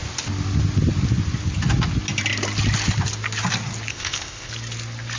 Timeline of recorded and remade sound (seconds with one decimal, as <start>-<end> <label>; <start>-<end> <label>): 0.0-3.9 recorded; 3.9-4.5 remade; 4.5-5.2 recorded